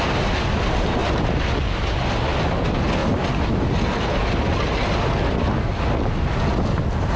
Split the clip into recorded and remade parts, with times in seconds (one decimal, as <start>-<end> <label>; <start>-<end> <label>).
0.0-7.2 recorded